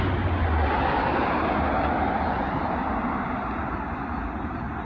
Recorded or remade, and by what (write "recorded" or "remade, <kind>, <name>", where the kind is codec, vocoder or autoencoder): recorded